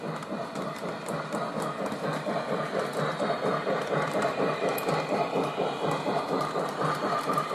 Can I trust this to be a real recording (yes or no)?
no